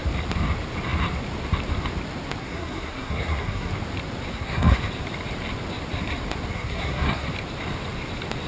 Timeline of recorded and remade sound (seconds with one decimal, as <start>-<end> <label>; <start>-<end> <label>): 0.0-2.4 recorded; 2.4-3.7 remade; 3.7-4.3 recorded; 4.3-4.8 remade; 4.8-6.5 recorded; 6.5-7.3 remade; 7.3-8.5 recorded

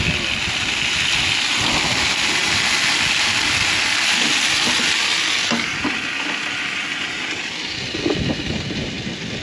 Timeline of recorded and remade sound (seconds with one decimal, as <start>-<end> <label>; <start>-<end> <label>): 0.0-9.4 recorded

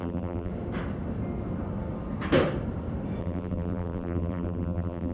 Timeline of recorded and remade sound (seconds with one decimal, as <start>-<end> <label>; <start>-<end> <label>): 0.0-0.5 remade; 0.5-3.2 recorded; 3.2-5.1 remade

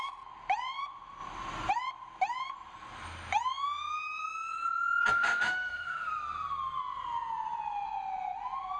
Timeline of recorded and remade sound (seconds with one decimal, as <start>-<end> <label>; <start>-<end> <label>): 0.0-5.1 recorded; 5.1-6.1 remade; 6.1-8.8 recorded

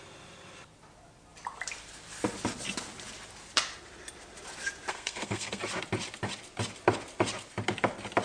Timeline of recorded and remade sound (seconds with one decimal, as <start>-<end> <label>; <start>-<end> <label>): 0.0-4.9 recorded; 4.9-5.6 remade; 5.6-8.2 recorded